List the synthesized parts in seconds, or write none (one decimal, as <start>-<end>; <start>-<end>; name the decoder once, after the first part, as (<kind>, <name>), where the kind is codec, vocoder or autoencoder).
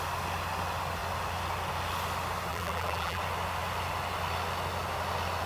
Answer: 2.5-3.2 (vocoder, BigVGAN v2)